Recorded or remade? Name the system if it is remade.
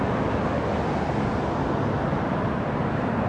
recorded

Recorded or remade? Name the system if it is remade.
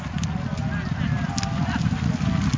recorded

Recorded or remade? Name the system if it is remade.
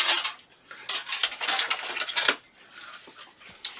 recorded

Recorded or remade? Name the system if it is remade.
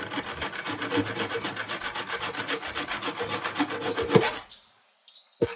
recorded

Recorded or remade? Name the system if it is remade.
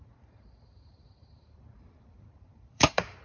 remade, vocoder, BigVGAN v2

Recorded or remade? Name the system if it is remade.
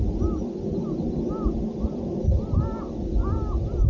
recorded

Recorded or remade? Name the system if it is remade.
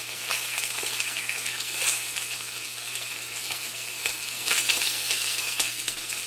remade, codec, SNAC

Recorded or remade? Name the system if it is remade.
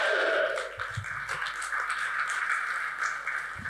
recorded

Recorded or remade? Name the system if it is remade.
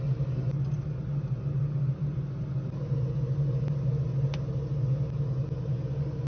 recorded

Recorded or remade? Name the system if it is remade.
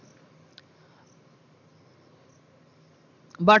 recorded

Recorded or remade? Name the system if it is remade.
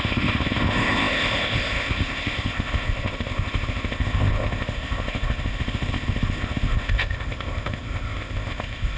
remade, codec, ZipCodec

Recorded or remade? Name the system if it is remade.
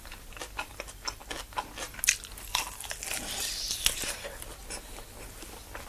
recorded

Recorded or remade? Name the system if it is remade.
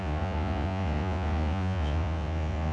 remade, vocoder, Vocos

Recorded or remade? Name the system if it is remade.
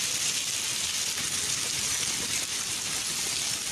recorded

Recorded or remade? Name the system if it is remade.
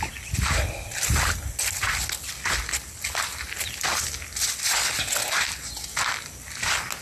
recorded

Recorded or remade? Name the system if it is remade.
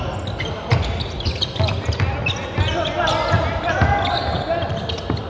recorded